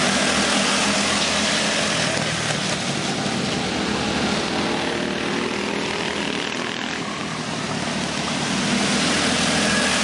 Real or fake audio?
real